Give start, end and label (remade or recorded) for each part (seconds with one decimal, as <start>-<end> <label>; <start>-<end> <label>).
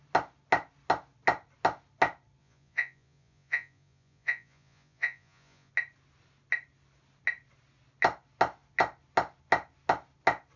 0.0-2.4 recorded; 2.4-5.7 remade; 5.7-10.6 recorded